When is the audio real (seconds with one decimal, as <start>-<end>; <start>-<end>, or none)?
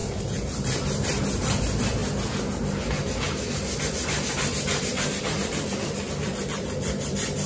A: 2.0-3.8